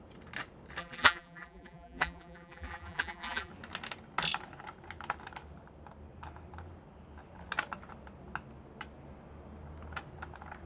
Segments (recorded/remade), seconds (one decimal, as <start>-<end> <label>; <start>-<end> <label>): 0.0-0.8 recorded; 0.8-3.5 remade; 3.5-10.7 recorded